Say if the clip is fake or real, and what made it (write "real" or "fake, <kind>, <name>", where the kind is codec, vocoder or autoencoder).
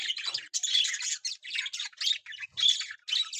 real